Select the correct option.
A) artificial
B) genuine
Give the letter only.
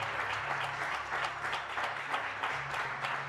B